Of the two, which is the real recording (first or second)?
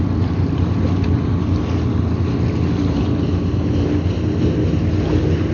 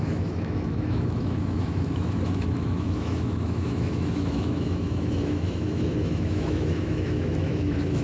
first